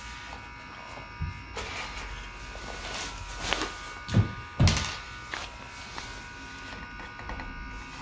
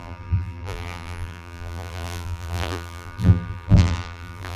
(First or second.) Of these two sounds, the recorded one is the first